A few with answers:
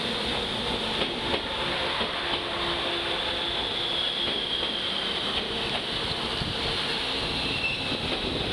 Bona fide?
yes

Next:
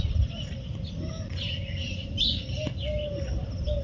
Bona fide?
yes